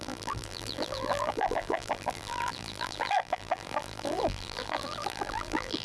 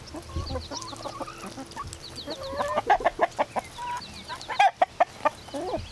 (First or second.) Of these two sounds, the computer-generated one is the first